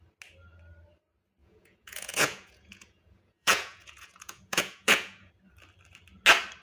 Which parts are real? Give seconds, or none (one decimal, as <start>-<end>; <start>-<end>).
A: 0.0-1.4; 5.3-6.6